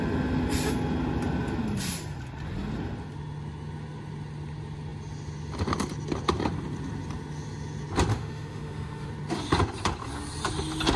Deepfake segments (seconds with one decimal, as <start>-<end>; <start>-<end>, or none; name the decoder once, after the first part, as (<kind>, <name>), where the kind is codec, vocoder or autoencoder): 8.1-9.1 (autoencoder, DAC-VAE)